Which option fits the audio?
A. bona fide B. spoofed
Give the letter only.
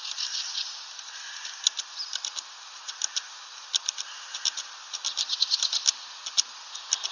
A